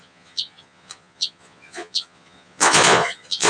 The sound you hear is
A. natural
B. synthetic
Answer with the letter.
B